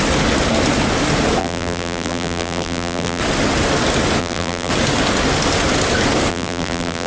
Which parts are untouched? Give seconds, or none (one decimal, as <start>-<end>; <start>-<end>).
0.0-1.4; 3.2-4.2; 4.7-6.3